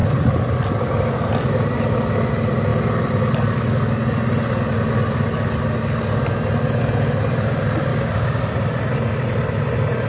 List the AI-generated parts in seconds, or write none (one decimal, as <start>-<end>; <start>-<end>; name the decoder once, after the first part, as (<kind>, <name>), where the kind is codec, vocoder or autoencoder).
7.9-8.4 (codec, DAC)